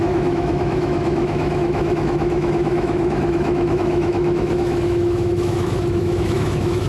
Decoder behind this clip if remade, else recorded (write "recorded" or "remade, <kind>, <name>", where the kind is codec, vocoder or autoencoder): remade, autoencoder, DAC-VAE